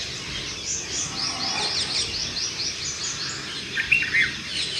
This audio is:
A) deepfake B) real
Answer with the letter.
B